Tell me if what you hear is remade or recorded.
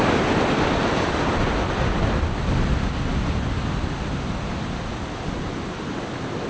recorded